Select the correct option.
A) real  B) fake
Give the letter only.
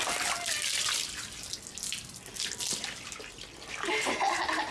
A